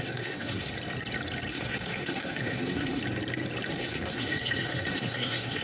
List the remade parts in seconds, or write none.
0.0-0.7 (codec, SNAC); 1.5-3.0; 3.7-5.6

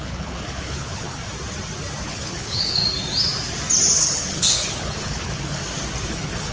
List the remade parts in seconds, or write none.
0.0-1.2 (codec, HILCodec); 2.0-2.8; 4.0-5.6; 6.1-6.5

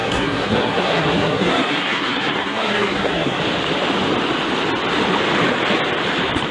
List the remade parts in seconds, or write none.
0.0-3.4 (codec, SNAC)

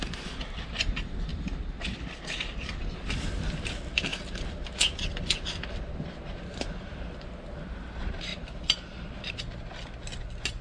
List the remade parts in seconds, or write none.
none

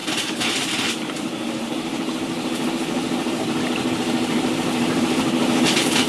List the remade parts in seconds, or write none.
0.5-6.1 (vocoder, BigVGAN v2)

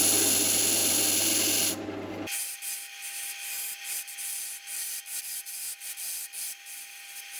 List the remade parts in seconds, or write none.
none

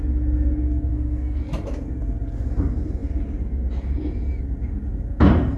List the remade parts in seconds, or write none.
0.9-1.4 (codec, SNAC)

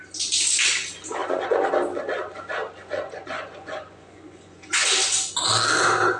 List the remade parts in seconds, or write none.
1.2-1.7 (vocoder, Vocos); 2.8-4.9